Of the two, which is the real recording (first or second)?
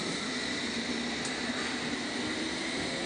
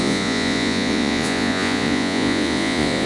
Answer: first